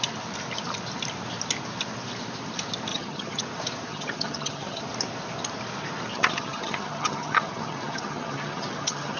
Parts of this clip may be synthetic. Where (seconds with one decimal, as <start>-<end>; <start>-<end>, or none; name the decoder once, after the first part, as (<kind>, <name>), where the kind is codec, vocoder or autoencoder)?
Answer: 2.9-3.4 (vocoder, HiFi-GAN); 3.9-4.8; 6.1-9.2